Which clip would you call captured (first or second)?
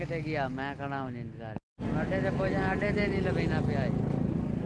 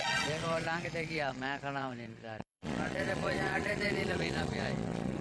first